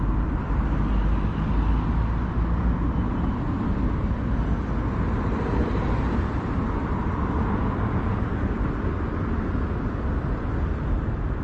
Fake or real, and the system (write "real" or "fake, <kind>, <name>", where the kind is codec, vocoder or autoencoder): real